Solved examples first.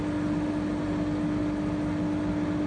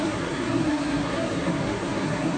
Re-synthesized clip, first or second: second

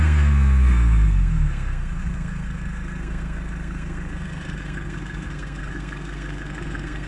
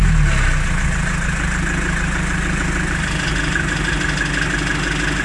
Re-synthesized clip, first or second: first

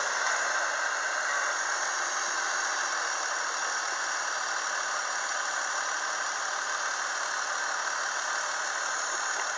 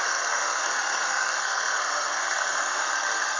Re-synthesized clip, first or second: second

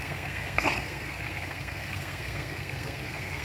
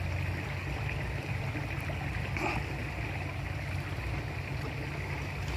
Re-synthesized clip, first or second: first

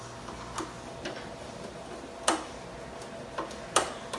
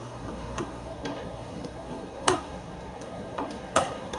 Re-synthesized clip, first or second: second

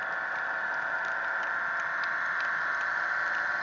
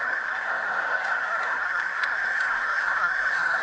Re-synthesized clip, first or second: second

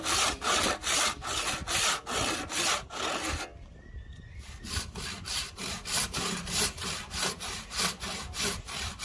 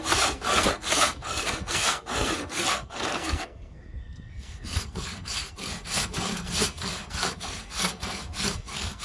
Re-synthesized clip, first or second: second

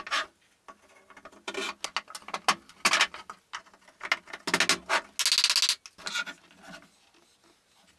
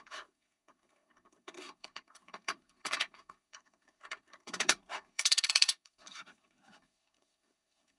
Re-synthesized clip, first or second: second